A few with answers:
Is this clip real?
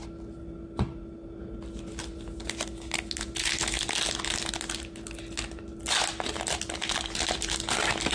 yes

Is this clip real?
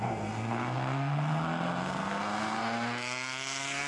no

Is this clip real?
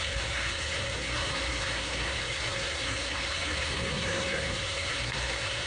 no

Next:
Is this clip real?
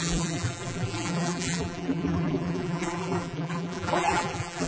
no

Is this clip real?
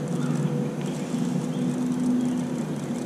yes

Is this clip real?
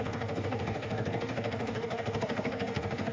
no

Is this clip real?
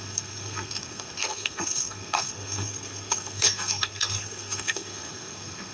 no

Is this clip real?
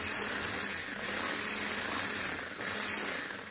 yes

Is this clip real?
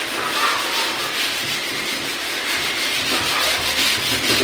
yes